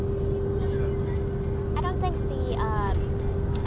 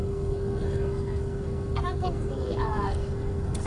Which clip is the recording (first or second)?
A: first